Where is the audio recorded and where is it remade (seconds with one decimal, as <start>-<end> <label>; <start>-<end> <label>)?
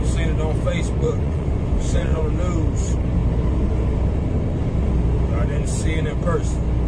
0.0-1.0 recorded; 1.0-2.2 remade; 2.2-6.9 recorded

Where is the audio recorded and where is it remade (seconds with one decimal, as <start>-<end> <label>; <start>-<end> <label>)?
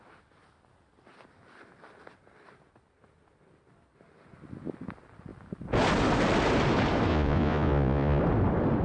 0.0-7.1 recorded; 7.1-8.2 remade; 8.2-8.8 recorded